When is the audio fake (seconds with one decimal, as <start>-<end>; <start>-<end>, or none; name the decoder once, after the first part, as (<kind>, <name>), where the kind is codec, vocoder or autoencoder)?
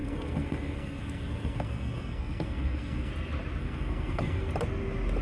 0.0-3.1 (codec, SNAC); 3.6-4.5